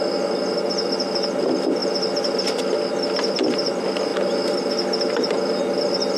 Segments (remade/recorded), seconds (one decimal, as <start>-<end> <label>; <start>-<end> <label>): 0.0-6.2 recorded